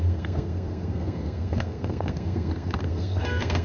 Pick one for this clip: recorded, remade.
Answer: remade